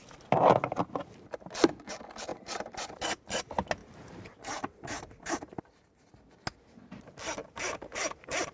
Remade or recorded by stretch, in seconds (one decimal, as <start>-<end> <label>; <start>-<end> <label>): 0.0-2.3 recorded; 2.3-3.0 remade; 3.0-3.8 recorded; 3.8-6.1 remade; 6.1-7.4 recorded; 7.4-8.5 remade